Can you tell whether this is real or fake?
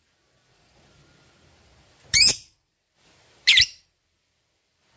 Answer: fake